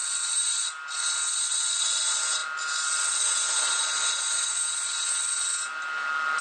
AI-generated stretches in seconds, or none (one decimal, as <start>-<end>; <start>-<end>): none